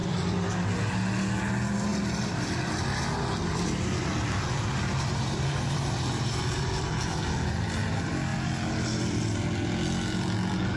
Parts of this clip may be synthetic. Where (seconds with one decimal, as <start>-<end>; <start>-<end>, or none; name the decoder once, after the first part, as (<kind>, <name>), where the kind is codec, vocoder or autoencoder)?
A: 0.0-0.5 (vocoder, BigVGAN v2); 1.9-7.2

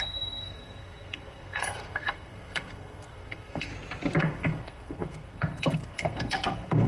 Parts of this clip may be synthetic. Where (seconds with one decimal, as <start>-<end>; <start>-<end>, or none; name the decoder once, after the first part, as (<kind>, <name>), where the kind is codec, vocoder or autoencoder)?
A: 0.0-3.7 (codec, SNAC); 4.2-6.9